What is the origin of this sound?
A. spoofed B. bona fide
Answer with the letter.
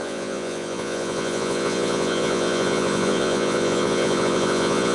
A